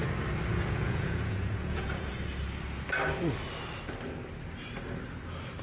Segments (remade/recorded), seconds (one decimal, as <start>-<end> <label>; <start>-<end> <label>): 0.0-0.5 recorded; 0.5-2.1 remade; 2.1-5.6 recorded